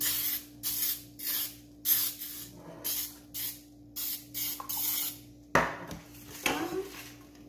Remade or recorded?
recorded